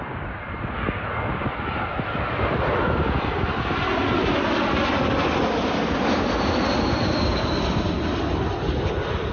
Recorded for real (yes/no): yes